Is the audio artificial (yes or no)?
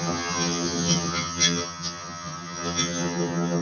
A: yes